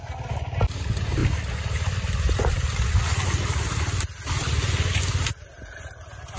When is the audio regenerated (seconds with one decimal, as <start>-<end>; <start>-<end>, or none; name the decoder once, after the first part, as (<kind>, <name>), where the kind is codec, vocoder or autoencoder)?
none